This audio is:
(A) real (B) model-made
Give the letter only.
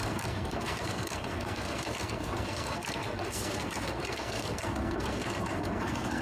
B